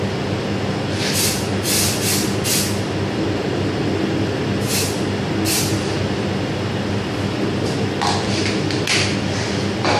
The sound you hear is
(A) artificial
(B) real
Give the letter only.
B